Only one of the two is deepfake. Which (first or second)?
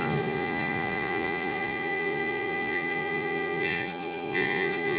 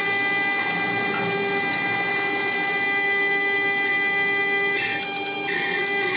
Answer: first